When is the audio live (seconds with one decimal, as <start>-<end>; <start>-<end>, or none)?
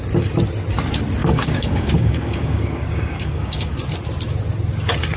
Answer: 0.0-1.2; 3.7-5.2